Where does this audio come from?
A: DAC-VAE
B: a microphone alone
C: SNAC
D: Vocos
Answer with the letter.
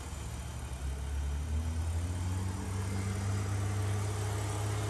B